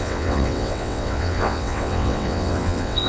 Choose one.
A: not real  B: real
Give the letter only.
A